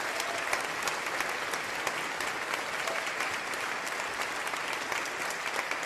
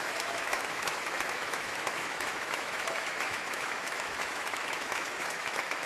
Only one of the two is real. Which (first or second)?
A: first